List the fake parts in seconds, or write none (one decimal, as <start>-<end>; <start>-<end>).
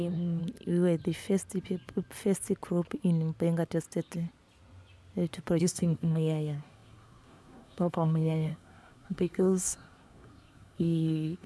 0.0-0.4; 5.6-11.5